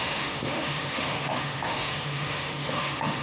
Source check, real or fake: fake